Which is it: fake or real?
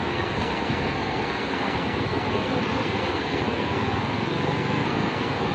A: fake